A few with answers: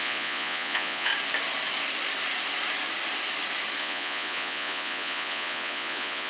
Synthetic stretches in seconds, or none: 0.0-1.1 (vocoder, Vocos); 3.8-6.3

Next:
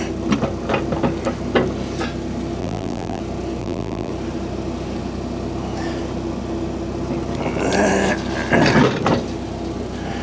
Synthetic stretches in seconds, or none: 2.6-3.2 (vocoder, BigVGAN v2); 3.6-4.1

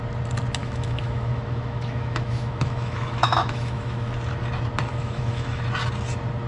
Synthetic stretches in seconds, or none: 0.6-4.1 (autoencoder, DAC-VAE); 4.9-5.6

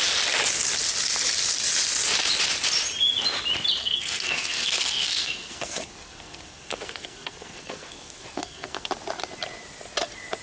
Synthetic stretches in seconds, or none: 3.8-8.9 (codec, SNAC)

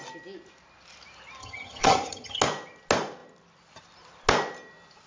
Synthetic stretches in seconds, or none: 1.4-2.4 (vocoder, HiFi-GAN)

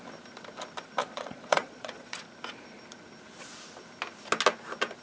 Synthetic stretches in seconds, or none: 1.0-2.2 (vocoder, Vocos)